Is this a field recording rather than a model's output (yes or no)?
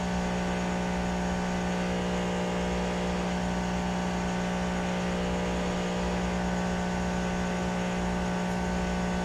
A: yes